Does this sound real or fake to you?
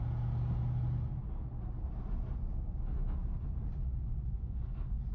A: real